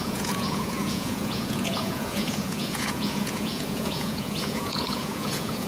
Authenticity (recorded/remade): remade